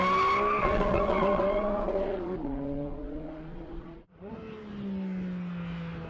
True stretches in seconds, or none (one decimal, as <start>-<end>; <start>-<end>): 0.0-0.6; 4.3-6.1